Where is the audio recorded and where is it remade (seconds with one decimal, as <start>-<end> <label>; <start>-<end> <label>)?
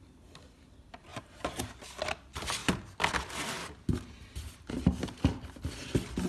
0.0-1.1 recorded; 1.1-1.8 remade; 1.8-6.3 recorded